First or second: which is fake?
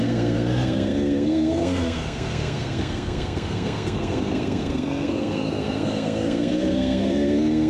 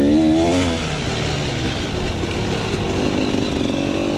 first